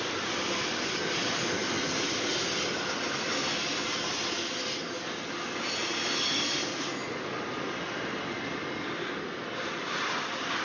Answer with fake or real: real